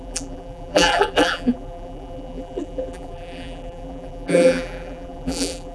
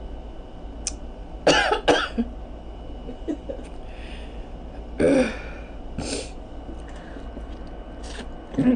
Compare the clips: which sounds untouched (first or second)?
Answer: second